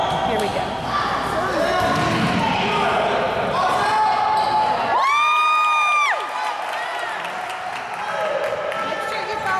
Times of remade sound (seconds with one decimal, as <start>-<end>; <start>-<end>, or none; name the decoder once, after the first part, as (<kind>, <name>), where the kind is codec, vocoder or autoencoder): none